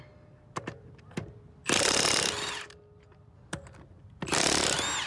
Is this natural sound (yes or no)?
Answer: yes